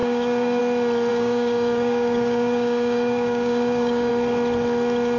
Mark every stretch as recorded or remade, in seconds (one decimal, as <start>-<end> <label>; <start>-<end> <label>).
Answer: 0.0-0.6 remade; 0.6-1.1 recorded; 1.1-4.1 remade; 4.1-5.2 recorded